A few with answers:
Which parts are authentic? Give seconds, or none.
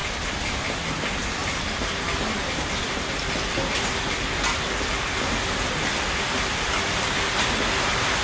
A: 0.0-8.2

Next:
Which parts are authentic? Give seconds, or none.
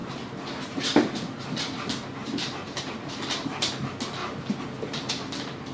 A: 0.8-2.2; 3.7-4.2; 5.1-5.7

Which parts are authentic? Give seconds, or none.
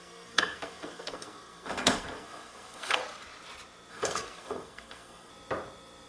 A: 3.0-3.9; 5.3-6.1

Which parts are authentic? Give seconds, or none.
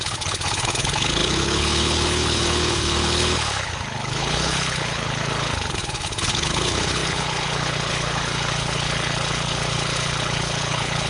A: none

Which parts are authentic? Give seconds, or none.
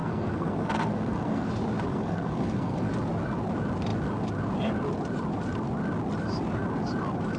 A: 1.5-1.9; 2.9-7.4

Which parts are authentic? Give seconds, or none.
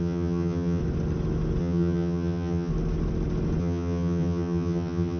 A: 0.8-1.6; 2.7-3.6